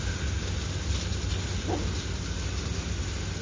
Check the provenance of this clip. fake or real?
real